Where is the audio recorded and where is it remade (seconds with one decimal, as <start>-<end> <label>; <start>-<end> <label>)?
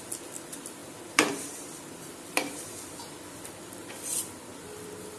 0.0-0.8 recorded; 0.8-3.9 remade; 3.9-5.2 recorded